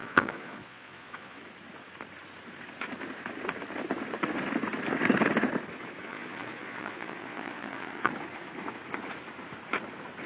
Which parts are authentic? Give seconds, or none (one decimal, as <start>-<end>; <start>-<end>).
1.4-6.0; 8.1-10.3

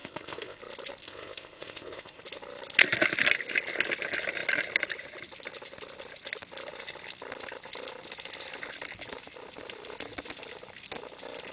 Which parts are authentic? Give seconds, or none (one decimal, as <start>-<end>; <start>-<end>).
0.6-1.0; 2.2-11.5

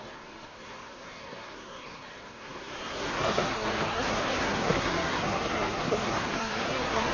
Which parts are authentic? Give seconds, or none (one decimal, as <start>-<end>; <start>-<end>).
none

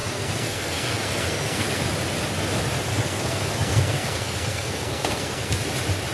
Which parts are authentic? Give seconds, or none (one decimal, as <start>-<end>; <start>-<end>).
1.9-2.9; 5.6-6.1

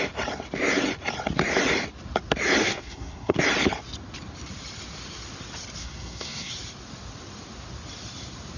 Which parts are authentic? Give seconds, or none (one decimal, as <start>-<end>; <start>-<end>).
0.0-2.6; 3.4-5.8; 6.5-8.6

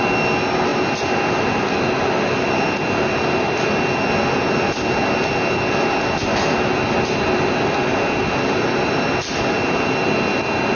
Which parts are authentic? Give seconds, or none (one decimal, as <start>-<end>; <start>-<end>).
0.0-10.7